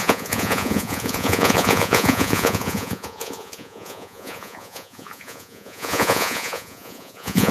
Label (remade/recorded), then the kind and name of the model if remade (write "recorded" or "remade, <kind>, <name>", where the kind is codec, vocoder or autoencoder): remade, vocoder, Vocos